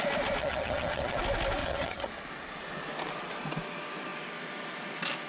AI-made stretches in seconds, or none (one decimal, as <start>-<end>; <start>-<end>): 0.4-1.2; 1.6-2.1